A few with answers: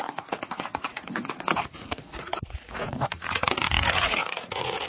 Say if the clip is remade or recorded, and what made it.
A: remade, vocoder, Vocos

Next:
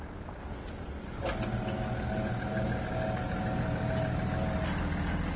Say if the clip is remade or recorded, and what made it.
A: recorded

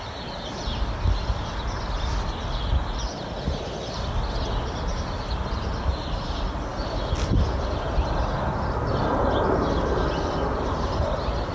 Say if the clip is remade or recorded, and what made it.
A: recorded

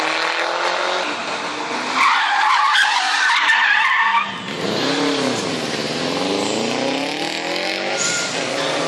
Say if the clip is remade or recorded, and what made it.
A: recorded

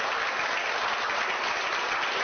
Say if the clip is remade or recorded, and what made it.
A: recorded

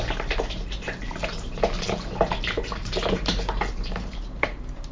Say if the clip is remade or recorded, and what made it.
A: remade, vocoder, BigVGAN v2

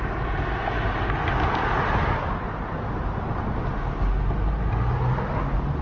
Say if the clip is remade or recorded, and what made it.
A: recorded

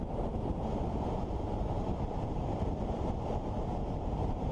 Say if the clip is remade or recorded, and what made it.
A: remade, vocoder, BigVGAN v2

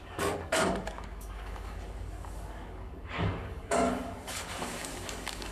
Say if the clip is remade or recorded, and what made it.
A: remade, codec, DAC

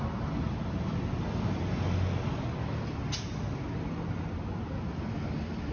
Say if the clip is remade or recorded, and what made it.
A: recorded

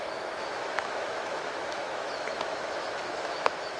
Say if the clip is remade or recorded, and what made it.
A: remade, autoencoder, DAC-VAE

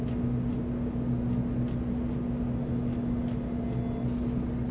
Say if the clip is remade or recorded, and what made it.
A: recorded